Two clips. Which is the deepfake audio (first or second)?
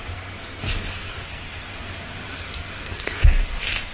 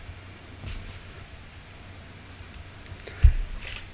first